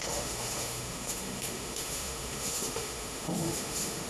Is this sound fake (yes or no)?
yes